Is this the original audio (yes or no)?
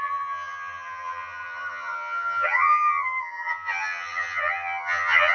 no